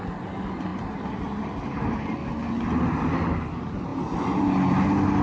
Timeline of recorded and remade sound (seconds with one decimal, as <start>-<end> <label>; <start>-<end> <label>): 0.0-0.7 recorded; 0.7-2.1 remade; 2.1-5.2 recorded